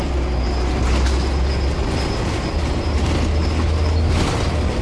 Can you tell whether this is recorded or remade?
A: recorded